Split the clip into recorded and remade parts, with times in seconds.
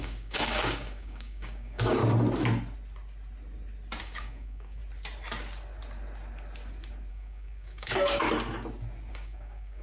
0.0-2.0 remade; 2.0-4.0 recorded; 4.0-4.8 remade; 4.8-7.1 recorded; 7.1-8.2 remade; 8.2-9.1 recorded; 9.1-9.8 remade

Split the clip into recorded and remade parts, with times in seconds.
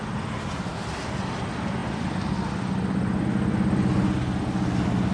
0.0-5.1 recorded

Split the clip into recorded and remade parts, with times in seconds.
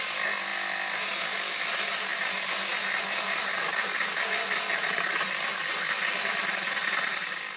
0.0-7.6 recorded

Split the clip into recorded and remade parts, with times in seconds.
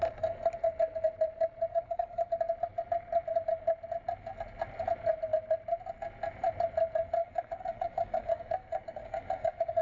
0.0-1.7 recorded; 1.7-2.3 remade; 2.3-7.2 recorded; 7.2-9.8 remade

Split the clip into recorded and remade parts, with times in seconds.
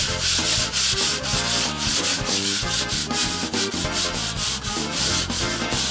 0.0-2.1 recorded; 2.1-2.8 remade; 2.8-5.9 recorded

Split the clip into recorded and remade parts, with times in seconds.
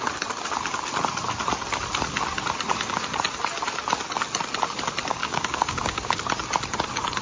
0.0-5.2 recorded; 5.2-6.2 remade; 6.2-7.2 recorded